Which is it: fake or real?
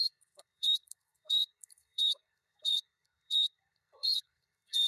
fake